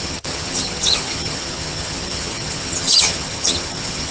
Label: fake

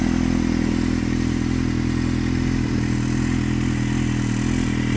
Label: real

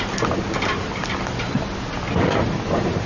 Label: real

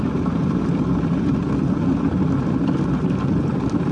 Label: real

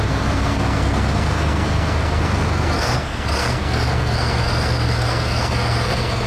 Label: fake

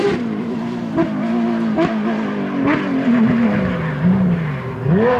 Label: real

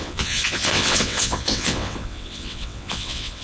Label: fake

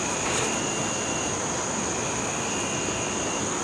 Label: real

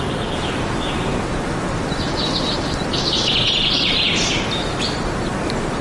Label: real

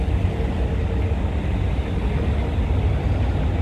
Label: real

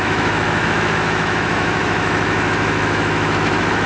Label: fake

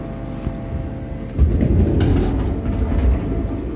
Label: real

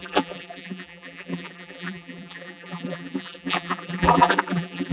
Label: fake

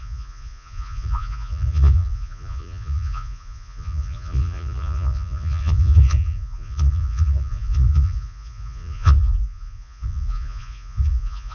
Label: fake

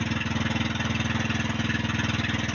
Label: real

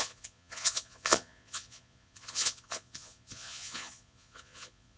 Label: fake